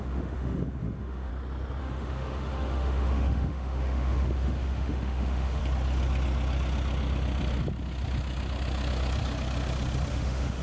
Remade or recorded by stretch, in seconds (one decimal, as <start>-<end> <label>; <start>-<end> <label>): 0.0-1.3 remade; 1.3-1.8 recorded; 1.8-5.6 remade; 5.6-10.1 recorded; 10.1-10.6 remade